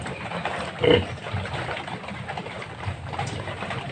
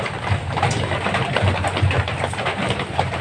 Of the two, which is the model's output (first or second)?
first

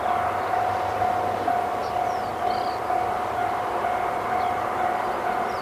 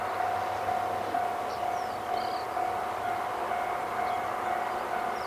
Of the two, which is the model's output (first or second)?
first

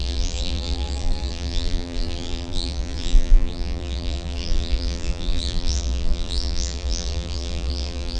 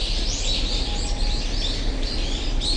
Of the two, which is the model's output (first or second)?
first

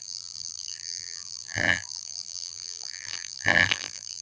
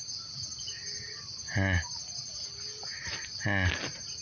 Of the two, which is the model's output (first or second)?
first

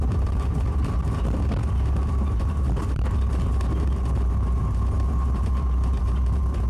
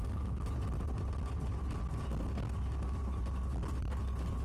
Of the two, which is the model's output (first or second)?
first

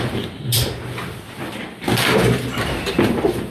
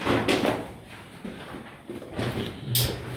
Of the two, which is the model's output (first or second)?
first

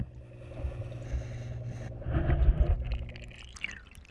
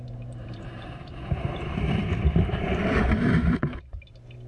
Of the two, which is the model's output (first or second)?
second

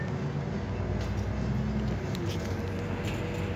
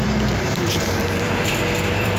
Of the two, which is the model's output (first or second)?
second